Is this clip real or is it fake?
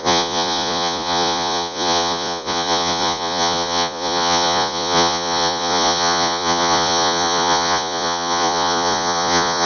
fake